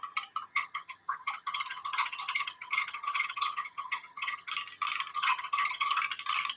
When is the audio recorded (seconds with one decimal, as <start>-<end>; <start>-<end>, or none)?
0.0-0.5; 4.5-5.1; 6.0-6.6